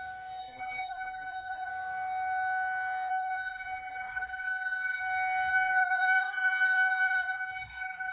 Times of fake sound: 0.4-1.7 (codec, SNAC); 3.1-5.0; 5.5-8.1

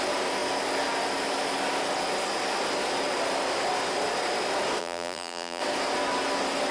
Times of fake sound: 4.8-5.6 (vocoder, BigVGAN v2)